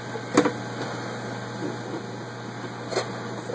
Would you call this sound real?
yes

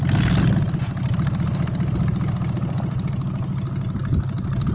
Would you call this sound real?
yes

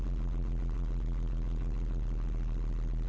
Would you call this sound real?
yes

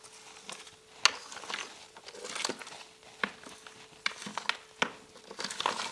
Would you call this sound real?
yes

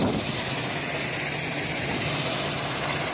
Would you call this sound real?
yes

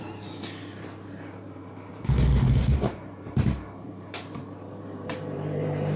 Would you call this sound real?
no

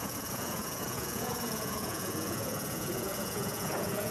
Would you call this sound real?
no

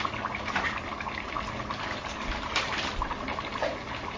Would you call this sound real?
yes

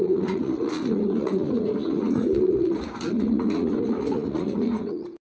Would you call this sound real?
no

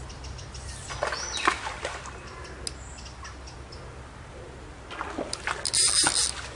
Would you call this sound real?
yes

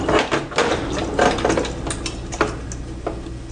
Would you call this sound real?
yes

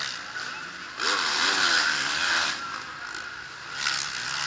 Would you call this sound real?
yes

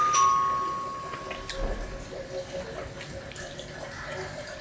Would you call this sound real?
yes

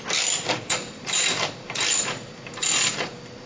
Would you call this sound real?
yes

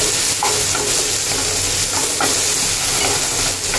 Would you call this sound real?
yes